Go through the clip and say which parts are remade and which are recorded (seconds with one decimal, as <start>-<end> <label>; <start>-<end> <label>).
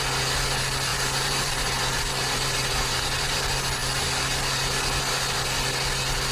0.0-0.9 recorded; 0.9-3.4 remade; 3.4-6.3 recorded